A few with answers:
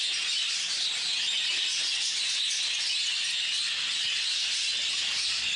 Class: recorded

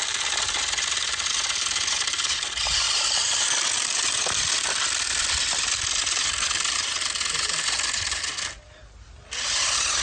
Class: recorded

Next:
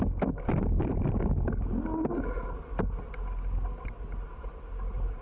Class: recorded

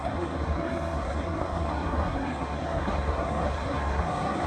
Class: remade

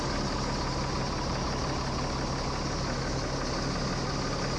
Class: recorded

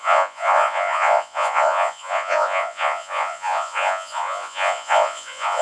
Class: remade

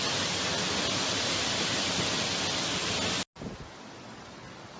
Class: recorded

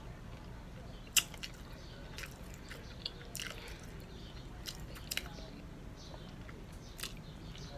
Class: recorded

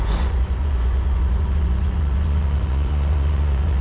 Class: remade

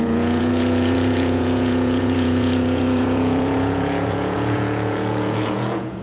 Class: remade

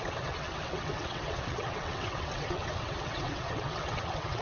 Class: remade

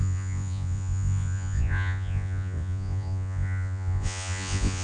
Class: remade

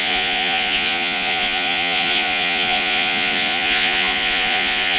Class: remade